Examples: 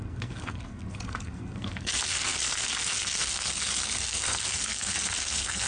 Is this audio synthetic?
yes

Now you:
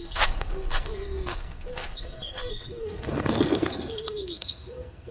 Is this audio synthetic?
yes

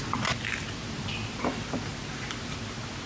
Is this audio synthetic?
no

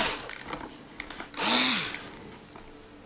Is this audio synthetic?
no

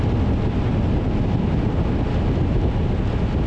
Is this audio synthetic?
no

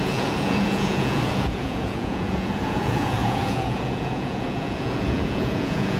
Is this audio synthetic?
yes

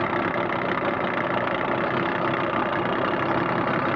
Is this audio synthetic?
no